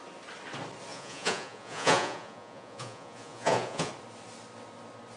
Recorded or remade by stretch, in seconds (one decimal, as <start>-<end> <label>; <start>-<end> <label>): 0.0-0.9 recorded; 0.9-3.9 remade; 3.9-5.2 recorded